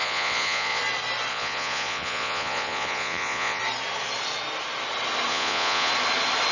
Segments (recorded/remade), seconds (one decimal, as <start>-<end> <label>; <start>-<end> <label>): 0.0-0.8 remade; 0.8-1.3 recorded; 1.3-3.6 remade; 3.6-5.3 recorded; 5.3-5.9 remade; 5.9-6.5 recorded